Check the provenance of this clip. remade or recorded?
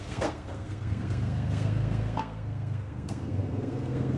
remade